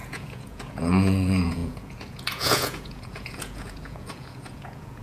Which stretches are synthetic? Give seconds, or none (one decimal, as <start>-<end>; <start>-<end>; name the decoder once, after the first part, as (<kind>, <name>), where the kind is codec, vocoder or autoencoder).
0.0-5.0 (vocoder, Vocos)